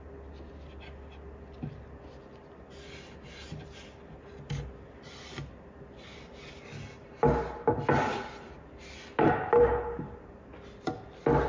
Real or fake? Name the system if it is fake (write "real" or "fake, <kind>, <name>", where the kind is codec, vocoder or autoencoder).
real